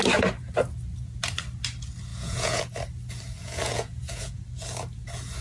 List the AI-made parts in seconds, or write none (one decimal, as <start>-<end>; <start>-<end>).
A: 2.1-2.6; 3.4-4.4